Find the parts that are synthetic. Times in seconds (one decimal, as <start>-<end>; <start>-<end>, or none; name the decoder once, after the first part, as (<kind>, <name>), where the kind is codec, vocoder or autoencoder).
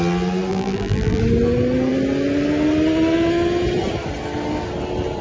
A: 0.5-1.2 (vocoder, BigVGAN v2)